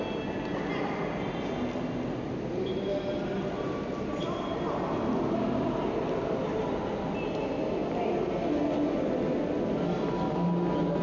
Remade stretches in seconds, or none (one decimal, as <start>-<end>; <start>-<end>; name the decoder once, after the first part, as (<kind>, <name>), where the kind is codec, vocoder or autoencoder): none